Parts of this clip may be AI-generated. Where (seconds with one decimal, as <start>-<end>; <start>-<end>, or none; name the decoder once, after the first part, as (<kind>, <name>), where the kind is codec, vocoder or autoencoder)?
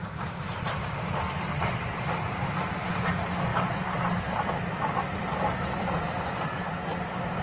0.0-2.4 (vocoder, BigVGAN v2); 3.5-4.2